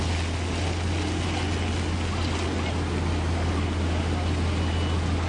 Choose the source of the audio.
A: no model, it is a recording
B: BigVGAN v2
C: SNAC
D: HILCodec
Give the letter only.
A